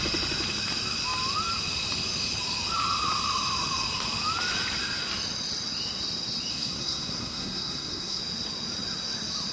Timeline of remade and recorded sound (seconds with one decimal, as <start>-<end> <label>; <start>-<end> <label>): 0.0-6.5 recorded; 6.5-8.2 remade; 8.2-9.5 recorded